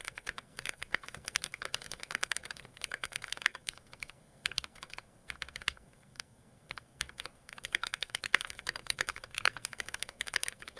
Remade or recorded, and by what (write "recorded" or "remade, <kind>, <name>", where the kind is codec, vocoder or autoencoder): remade, codec, SNAC